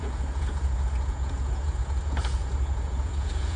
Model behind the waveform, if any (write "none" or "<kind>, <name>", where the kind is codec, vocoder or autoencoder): vocoder, Vocos